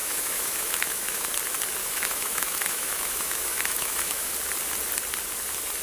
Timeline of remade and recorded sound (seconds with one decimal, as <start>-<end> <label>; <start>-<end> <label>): 0.0-1.3 remade; 1.3-1.8 recorded; 1.8-4.3 remade; 4.3-5.8 recorded